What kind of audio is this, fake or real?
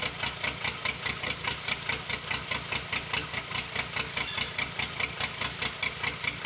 real